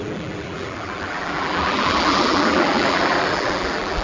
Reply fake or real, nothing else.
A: fake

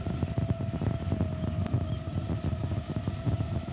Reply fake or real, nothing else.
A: real